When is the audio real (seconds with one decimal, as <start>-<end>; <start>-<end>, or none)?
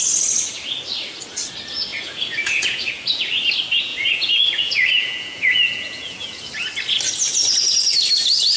0.0-1.9; 3.2-3.9; 6.5-8.6